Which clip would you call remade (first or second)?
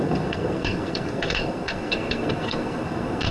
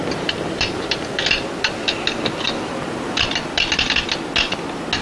first